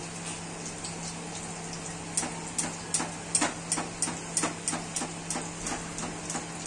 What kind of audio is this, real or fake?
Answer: real